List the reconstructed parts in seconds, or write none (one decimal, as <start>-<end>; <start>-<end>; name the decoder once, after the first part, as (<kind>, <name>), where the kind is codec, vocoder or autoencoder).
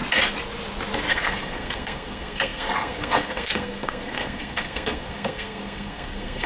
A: 1.1-6.5 (codec, SNAC)